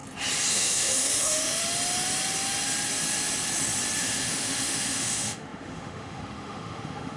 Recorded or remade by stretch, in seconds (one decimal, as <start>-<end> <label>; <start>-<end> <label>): 0.0-0.5 recorded; 0.5-1.6 remade; 1.6-4.0 recorded; 4.0-7.2 remade